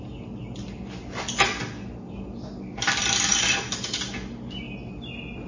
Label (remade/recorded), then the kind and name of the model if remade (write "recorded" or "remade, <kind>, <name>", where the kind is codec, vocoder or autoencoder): recorded